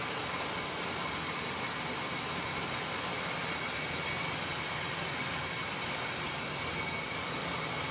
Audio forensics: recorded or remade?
recorded